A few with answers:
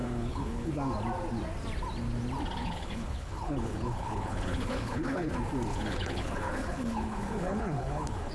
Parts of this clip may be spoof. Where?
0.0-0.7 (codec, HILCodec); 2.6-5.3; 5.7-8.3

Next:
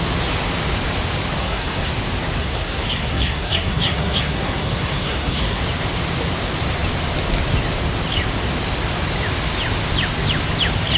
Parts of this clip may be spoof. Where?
1.4-1.9 (codec, SNAC); 2.4-5.6

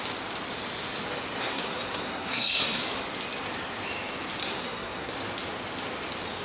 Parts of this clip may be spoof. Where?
1.4-2.8 (codec, SNAC); 4.4-5.1

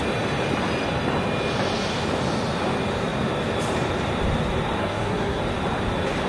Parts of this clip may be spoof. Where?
4.8-5.4 (codec, SNAC)

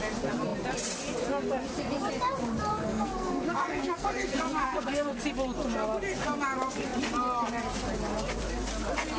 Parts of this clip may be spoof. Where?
2.7-5.2 (codec, SNAC)

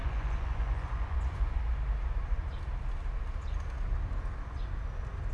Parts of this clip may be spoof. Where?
0.0-1.6 (vocoder, Vocos)